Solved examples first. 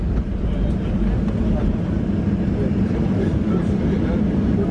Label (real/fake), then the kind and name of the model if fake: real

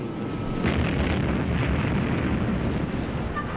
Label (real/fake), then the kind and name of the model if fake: real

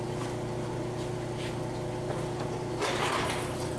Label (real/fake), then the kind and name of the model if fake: real